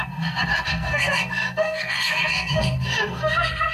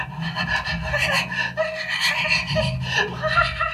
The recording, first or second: second